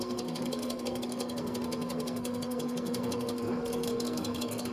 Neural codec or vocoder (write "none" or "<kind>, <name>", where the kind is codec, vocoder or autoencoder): codec, SNAC